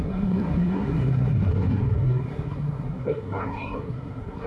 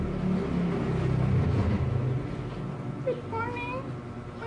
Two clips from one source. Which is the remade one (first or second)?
first